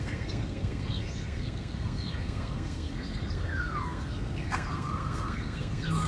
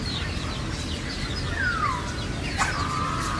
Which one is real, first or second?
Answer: second